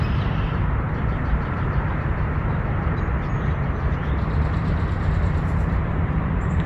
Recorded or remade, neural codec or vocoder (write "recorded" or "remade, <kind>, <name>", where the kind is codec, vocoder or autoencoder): remade, vocoder, BigVGAN v2